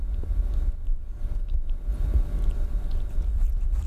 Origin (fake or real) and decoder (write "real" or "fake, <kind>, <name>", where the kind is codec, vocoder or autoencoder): real